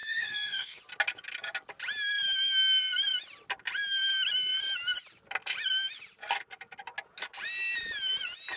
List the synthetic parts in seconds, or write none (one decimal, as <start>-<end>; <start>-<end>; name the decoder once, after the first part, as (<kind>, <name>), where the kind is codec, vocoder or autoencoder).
0.0-0.8 (codec, SNAC)